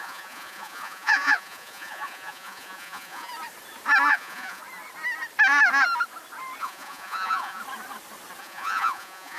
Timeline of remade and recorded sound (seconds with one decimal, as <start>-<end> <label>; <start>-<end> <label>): 0.0-3.3 remade; 3.3-4.1 recorded; 4.1-4.6 remade; 4.6-6.6 recorded; 6.6-7.6 remade; 7.6-8.4 recorded; 8.4-9.4 remade